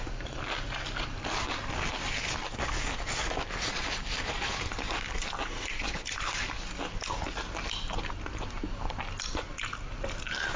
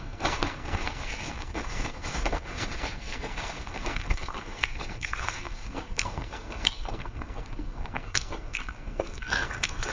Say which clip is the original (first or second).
first